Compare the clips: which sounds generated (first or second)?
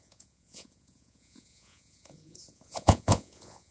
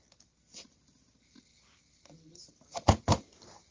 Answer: first